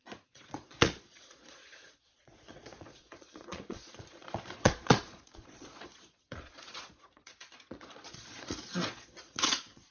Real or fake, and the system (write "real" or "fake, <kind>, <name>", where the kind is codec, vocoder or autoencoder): fake, vocoder, Vocos